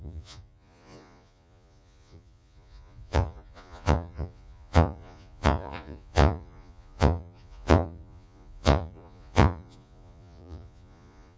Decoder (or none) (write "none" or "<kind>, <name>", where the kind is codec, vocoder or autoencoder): vocoder, Vocos